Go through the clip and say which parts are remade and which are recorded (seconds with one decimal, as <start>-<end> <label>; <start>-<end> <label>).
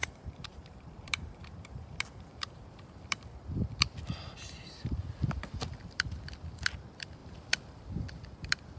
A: 0.0-2.7 remade; 2.7-8.8 recorded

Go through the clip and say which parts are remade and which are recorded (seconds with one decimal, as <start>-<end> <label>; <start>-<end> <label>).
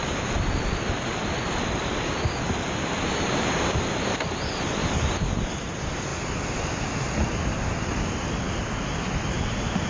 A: 0.0-9.9 recorded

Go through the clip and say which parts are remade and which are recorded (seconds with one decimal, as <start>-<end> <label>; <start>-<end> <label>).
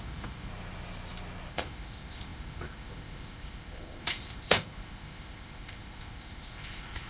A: 0.0-0.5 remade; 0.5-1.5 recorded; 1.5-7.1 remade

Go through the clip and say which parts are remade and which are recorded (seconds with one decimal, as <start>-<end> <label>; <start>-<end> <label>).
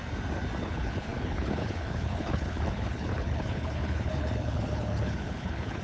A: 0.0-0.6 recorded; 0.6-5.8 remade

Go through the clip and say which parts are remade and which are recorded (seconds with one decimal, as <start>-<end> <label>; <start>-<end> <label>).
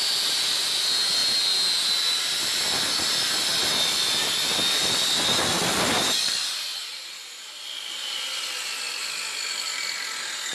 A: 0.0-10.5 recorded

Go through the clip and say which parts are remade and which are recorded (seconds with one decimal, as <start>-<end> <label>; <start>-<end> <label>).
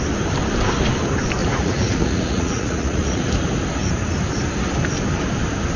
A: 0.0-1.4 recorded; 1.4-3.3 remade; 3.3-5.8 recorded